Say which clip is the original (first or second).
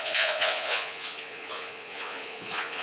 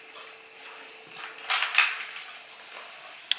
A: second